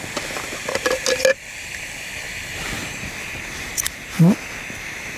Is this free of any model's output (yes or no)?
yes